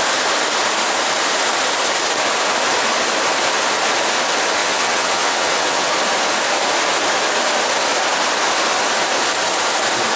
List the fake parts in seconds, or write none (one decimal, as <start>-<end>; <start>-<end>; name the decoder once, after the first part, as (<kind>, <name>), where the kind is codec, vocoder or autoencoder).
4.6-5.9 (vocoder, WaveNeXt)